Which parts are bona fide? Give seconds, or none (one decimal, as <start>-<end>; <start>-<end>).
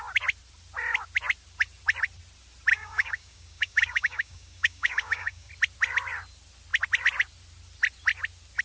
0.0-2.7; 5.5-8.6